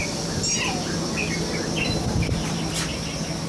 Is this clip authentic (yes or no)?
yes